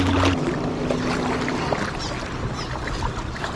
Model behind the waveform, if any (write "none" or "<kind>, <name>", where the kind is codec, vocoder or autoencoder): none